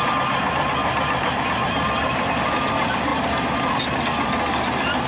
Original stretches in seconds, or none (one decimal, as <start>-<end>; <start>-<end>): 0.0-0.8; 2.7-3.1; 3.7-5.1